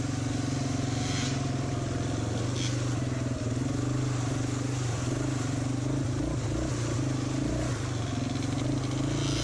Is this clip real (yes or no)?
yes